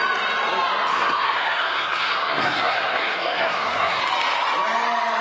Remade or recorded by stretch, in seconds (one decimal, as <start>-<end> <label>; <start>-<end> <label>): 0.0-0.9 recorded; 0.9-4.0 remade; 4.0-5.2 recorded